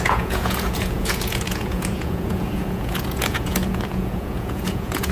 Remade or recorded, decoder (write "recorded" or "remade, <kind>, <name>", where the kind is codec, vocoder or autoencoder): remade, vocoder, Vocos